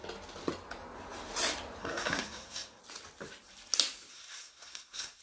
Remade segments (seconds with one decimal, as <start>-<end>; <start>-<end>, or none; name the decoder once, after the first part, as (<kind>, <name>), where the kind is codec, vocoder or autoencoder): 1.8-2.8 (codec, SNAC); 4.1-5.2